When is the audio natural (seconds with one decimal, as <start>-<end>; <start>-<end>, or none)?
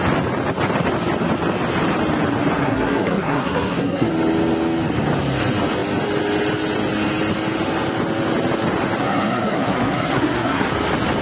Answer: 0.0-2.6; 4.1-9.0; 10.7-11.2